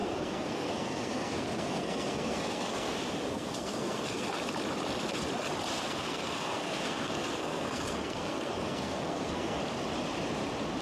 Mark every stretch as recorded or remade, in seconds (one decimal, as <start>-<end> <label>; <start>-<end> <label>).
0.0-2.9 remade; 2.9-3.3 recorded; 3.3-4.3 remade; 4.3-5.8 recorded; 5.8-9.6 remade; 9.6-10.8 recorded